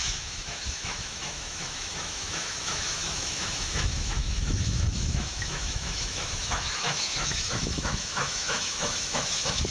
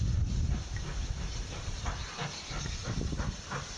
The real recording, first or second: second